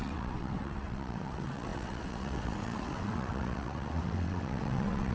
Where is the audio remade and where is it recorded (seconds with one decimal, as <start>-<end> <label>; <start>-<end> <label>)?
0.0-5.1 remade